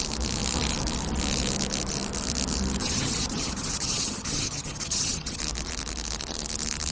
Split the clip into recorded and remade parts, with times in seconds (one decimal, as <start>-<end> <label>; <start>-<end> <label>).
0.0-2.8 recorded; 2.8-5.4 remade; 5.4-6.9 recorded